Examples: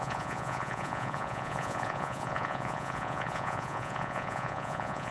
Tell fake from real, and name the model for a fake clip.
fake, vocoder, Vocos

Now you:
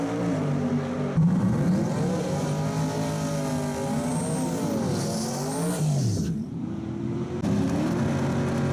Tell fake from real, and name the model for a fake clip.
real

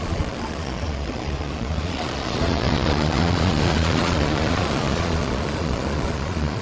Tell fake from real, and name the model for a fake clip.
fake, vocoder, Vocos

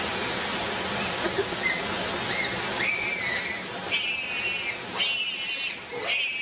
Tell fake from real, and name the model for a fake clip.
real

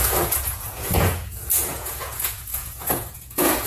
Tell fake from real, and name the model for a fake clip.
fake, vocoder, Vocos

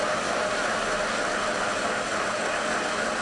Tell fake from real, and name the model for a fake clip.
real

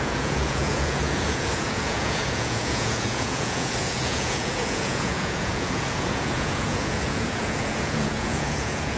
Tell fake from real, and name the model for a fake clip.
fake, vocoder, Vocos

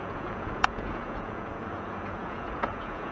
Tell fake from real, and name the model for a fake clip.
fake, vocoder, Vocos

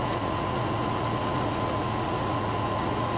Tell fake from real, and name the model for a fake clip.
fake, vocoder, Vocos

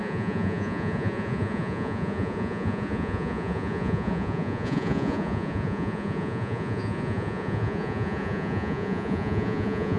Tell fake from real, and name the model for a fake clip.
fake, vocoder, Vocos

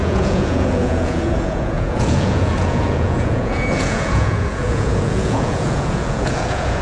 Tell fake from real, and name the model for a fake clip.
fake, vocoder, Vocos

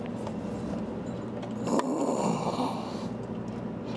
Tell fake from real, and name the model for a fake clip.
real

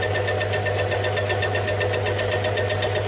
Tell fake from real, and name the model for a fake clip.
real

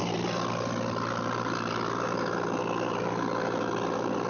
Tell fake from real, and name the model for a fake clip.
real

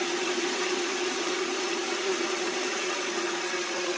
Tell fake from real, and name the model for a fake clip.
fake, vocoder, Vocos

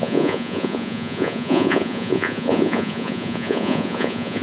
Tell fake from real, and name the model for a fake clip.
fake, vocoder, Vocos